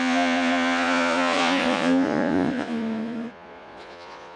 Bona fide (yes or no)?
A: no